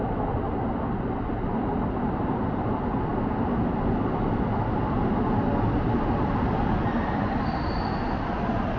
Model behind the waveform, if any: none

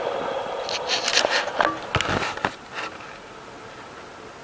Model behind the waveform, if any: none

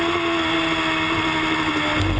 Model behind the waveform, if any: none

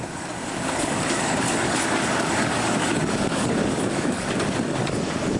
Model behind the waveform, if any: codec, DAC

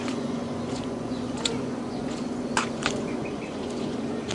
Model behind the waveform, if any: vocoder, Vocos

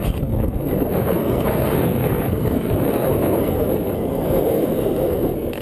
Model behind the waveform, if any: codec, SNAC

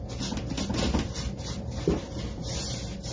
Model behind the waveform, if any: none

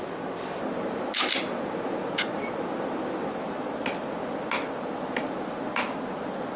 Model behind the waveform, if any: none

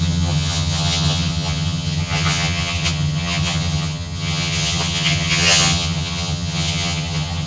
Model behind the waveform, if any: vocoder, HiFi-GAN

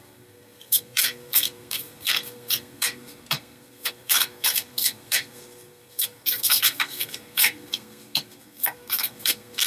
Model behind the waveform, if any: codec, SNAC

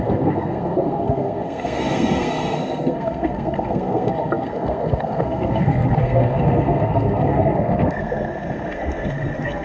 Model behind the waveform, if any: codec, SNAC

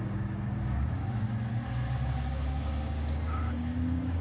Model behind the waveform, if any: codec, DAC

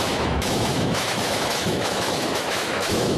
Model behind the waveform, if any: autoencoder, DAC-VAE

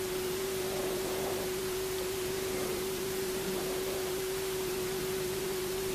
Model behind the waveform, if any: vocoder, BigVGAN v2